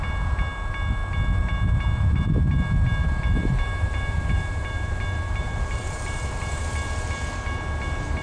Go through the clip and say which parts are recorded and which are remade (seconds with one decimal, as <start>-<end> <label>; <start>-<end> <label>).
0.0-3.0 recorded; 3.0-6.6 remade; 6.6-8.2 recorded